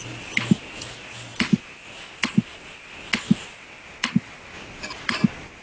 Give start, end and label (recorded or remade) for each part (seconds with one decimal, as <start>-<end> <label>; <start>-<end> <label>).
0.0-5.6 recorded

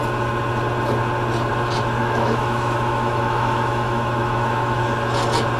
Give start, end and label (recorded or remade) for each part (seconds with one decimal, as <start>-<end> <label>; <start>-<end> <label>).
0.0-2.0 recorded; 2.0-4.8 remade; 4.8-5.6 recorded

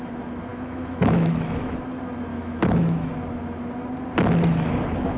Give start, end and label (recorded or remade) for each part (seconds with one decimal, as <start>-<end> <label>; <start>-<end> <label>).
0.0-0.5 recorded; 0.5-1.7 remade; 1.7-2.3 recorded; 2.3-3.1 remade; 3.1-5.2 recorded

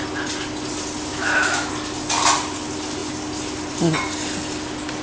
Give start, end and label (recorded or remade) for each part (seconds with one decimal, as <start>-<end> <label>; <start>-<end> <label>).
0.0-1.1 recorded; 1.1-1.7 remade; 1.7-5.0 recorded